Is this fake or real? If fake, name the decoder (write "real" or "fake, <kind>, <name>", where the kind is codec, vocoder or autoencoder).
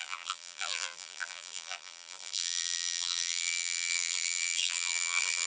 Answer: fake, vocoder, BigVGAN v2